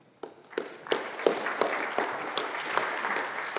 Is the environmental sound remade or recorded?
recorded